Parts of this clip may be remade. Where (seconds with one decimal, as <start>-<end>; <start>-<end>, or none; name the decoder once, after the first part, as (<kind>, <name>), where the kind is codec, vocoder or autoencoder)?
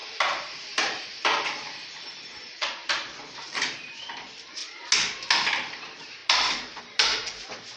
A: 0.0-4.6 (vocoder, BigVGAN v2); 5.4-7.8